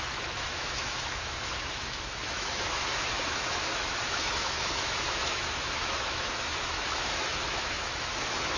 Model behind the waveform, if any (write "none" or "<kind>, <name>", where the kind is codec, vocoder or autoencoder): autoencoder, DAC-VAE